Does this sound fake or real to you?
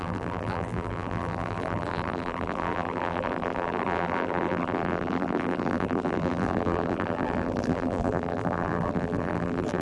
fake